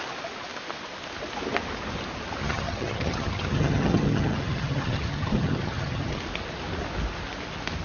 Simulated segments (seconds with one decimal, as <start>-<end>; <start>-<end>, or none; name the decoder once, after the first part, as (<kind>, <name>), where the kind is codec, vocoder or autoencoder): 2.4-6.2 (vocoder, HiFi-GAN)